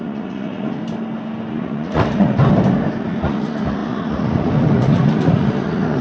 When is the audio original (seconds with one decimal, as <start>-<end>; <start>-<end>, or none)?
0.8-1.5; 2.4-3.0